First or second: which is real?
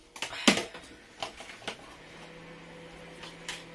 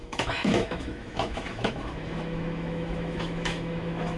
first